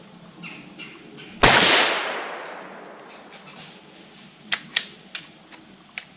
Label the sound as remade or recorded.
recorded